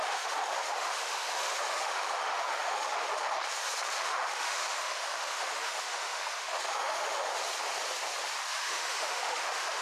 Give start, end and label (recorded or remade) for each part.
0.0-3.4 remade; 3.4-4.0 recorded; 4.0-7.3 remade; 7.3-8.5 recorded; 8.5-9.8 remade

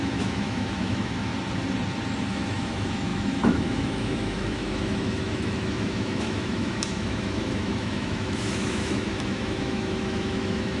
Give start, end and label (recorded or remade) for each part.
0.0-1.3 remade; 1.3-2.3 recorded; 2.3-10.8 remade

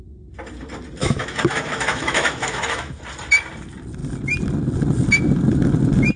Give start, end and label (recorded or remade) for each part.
0.0-1.0 recorded; 1.0-3.0 remade; 3.0-6.2 recorded